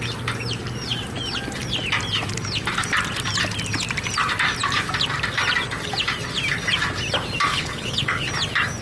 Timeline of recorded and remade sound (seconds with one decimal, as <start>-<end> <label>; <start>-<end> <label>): 0.0-7.5 recorded; 7.5-8.3 remade; 8.3-8.8 recorded